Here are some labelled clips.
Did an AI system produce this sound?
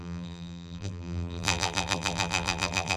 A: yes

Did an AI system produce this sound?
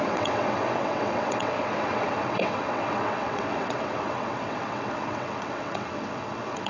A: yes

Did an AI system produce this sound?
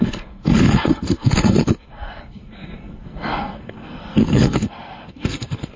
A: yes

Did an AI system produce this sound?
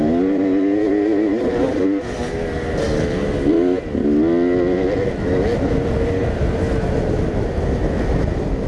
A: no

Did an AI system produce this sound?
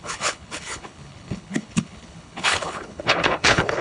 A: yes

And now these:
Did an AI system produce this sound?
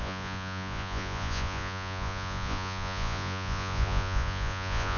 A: yes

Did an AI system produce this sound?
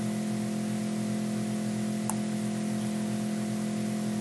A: no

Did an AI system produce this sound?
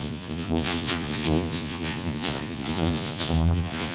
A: yes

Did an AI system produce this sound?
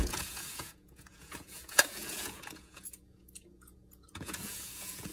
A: yes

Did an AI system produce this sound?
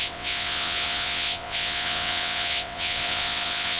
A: yes